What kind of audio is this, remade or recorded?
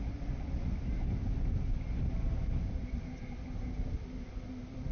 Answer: recorded